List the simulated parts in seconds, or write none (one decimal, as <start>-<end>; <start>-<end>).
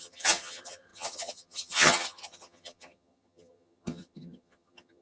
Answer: 0.0-5.0